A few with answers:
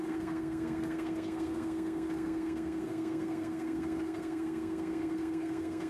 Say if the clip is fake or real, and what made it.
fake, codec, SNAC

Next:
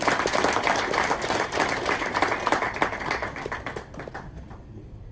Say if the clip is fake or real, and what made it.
real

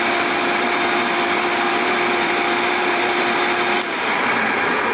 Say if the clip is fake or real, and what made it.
fake, vocoder, BigVGAN v2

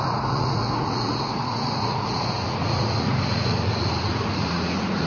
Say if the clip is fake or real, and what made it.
fake, vocoder, Vocos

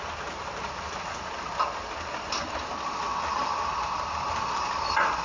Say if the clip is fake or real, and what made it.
real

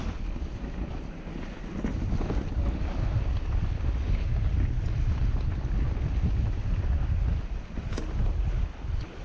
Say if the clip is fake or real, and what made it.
real